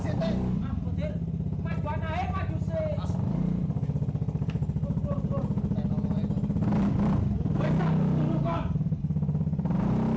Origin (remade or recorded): recorded